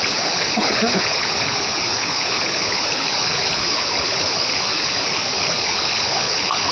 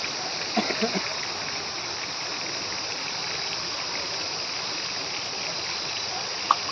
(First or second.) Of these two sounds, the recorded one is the second